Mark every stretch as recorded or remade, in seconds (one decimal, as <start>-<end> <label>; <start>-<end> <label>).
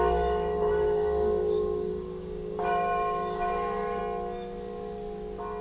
0.0-4.0 remade; 4.0-5.6 recorded